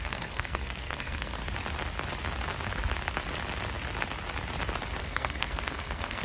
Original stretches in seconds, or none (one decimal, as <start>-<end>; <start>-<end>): 1.4-5.0